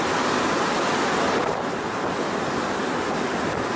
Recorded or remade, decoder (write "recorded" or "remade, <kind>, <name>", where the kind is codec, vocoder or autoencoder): recorded